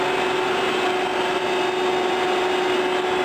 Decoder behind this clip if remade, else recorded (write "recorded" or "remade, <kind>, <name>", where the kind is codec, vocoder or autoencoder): recorded